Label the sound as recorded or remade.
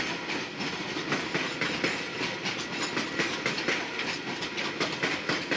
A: recorded